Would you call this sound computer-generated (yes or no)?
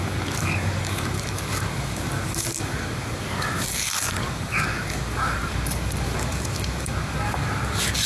yes